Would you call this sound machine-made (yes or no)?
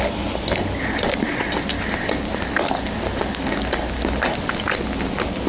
no